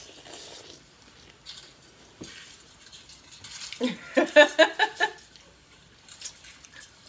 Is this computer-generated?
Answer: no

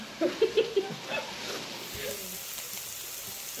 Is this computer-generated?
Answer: no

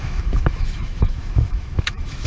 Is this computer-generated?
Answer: yes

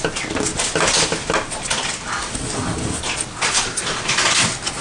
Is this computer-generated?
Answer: no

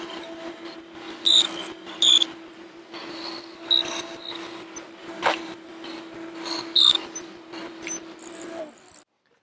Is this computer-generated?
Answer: no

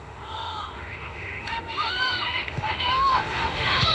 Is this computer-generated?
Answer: yes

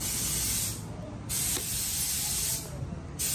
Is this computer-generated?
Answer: no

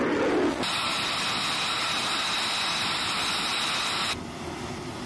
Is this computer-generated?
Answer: no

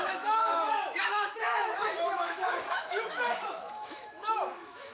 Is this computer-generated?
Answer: yes